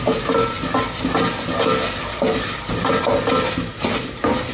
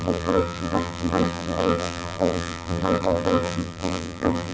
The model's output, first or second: second